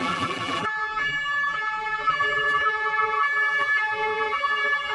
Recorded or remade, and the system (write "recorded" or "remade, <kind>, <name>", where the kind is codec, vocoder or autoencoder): remade, vocoder, BigVGAN v2